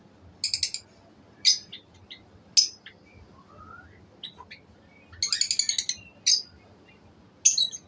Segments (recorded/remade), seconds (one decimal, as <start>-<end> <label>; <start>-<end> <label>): 0.0-7.9 recorded